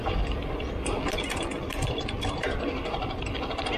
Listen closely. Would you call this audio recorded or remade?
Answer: recorded